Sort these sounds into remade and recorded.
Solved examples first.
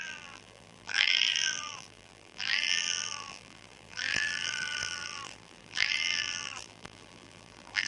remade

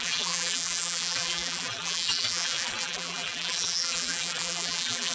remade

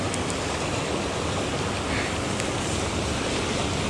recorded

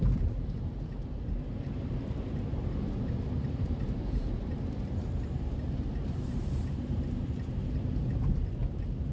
remade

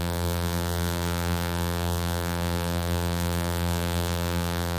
remade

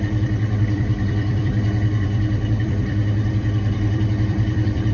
remade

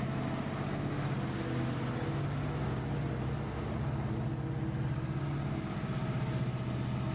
recorded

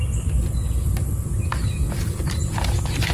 recorded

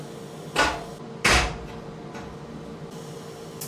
recorded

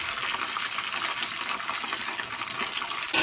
recorded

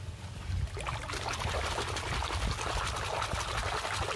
recorded